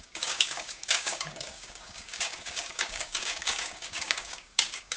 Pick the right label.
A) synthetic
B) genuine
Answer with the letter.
A